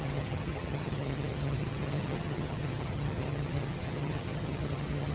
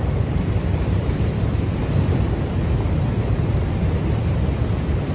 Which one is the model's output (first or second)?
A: first